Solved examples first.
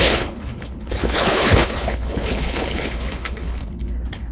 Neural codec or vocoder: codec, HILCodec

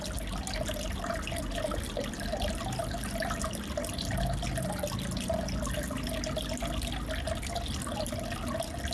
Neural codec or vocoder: none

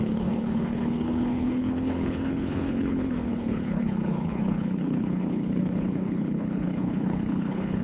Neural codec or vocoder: codec, HILCodec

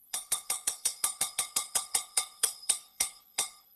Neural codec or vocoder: codec, HILCodec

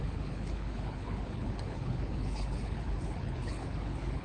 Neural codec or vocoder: codec, HILCodec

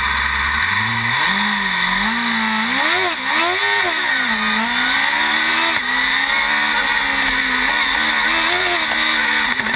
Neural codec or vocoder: none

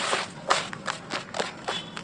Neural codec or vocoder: none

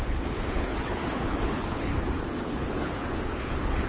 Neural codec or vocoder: codec, HILCodec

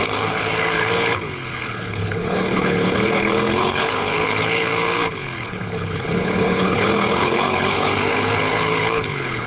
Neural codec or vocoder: codec, HILCodec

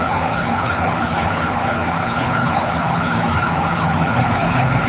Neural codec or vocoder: codec, HILCodec